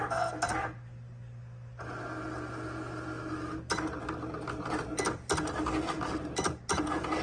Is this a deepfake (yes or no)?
no